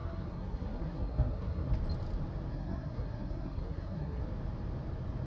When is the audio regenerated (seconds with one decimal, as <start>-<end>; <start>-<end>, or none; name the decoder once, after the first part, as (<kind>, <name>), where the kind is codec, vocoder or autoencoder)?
0.0-1.7 (codec, SNAC); 2.5-4.2